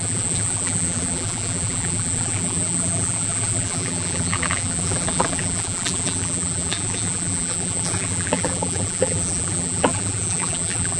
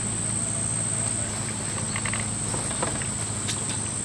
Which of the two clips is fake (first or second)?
first